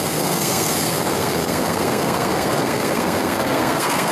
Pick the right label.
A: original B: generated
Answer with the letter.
B